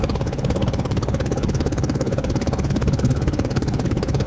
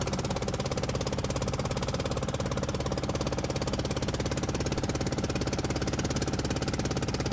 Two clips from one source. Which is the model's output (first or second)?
first